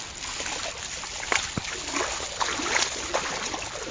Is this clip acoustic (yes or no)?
yes